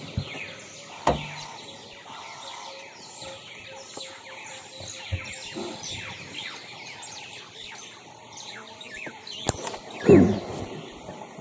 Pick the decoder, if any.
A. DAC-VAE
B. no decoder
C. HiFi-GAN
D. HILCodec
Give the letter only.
B